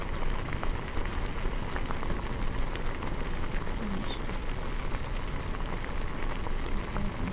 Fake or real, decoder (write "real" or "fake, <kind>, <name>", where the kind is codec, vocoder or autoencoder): real